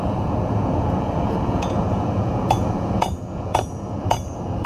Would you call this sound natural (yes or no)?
no